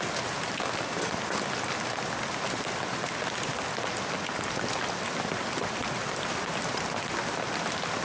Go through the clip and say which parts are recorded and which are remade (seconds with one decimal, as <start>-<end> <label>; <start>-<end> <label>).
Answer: 0.0-8.0 recorded